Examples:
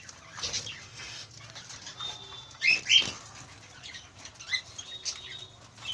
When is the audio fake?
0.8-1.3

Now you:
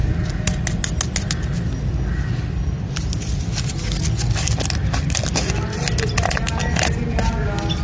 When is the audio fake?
none

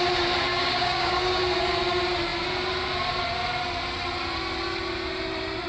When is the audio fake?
0.5-1.4

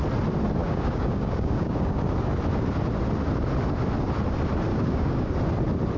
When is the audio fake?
0.6-2.0; 4.7-5.3

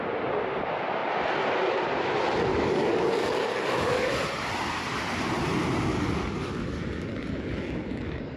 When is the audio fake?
2.5-4.1; 5.9-8.4